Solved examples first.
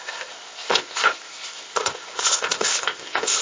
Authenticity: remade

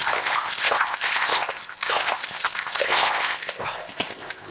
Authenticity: remade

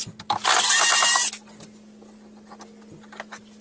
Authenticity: recorded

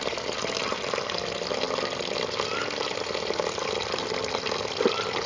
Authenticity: recorded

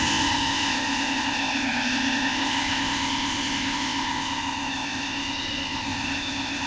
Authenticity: remade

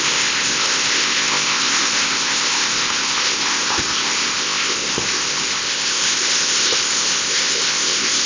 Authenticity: remade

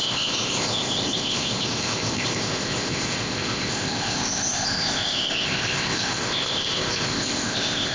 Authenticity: remade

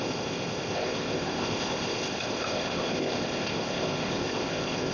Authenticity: remade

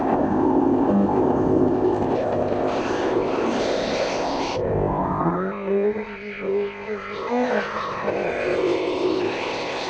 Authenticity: remade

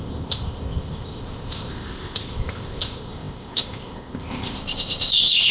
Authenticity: remade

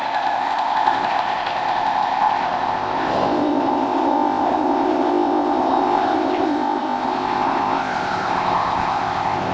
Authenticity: remade